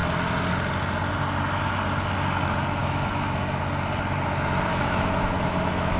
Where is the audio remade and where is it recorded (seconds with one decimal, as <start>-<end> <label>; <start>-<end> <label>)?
0.0-2.8 recorded; 2.8-3.6 remade; 3.6-4.7 recorded; 4.7-6.0 remade